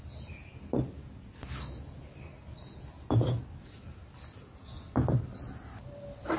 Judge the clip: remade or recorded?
recorded